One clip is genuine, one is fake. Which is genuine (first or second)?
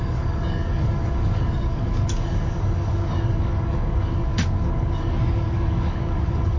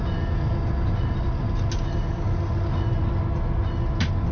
second